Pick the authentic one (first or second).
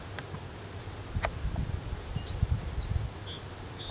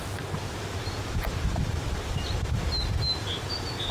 first